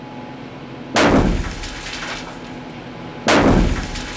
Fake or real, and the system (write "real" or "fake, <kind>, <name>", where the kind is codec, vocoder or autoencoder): real